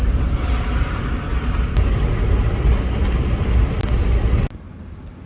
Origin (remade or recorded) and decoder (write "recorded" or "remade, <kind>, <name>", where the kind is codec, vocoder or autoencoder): recorded